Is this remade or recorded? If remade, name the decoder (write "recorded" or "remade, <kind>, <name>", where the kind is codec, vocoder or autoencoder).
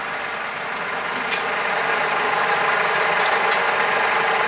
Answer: recorded